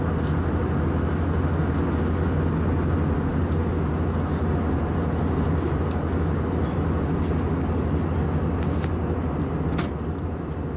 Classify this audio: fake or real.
real